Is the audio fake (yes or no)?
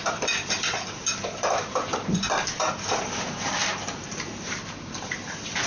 yes